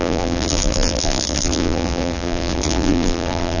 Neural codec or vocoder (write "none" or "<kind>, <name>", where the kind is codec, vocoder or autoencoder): vocoder, BigVGAN v2